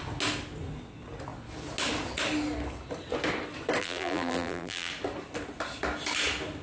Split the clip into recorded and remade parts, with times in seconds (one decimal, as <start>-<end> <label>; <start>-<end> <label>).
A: 0.0-3.8 recorded; 3.8-4.9 remade; 4.9-6.6 recorded